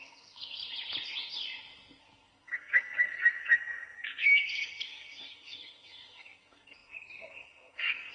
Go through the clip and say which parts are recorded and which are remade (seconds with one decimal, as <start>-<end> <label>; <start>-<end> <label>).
0.0-0.6 remade; 0.6-2.0 recorded; 2.0-8.1 remade

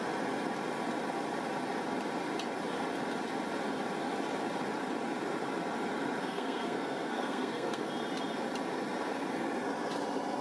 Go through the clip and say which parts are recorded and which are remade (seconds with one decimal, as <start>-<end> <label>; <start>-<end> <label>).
0.0-6.2 recorded; 6.2-7.9 remade; 7.9-10.4 recorded

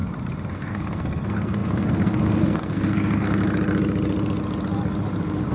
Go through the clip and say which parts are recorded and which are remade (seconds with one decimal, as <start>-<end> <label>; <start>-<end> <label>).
0.0-0.5 recorded; 0.5-3.4 remade; 3.4-5.5 recorded

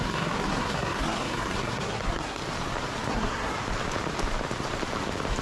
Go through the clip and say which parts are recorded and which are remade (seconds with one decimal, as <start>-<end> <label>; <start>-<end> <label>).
0.0-2.4 remade; 2.4-3.1 recorded; 3.1-3.5 remade; 3.5-5.4 recorded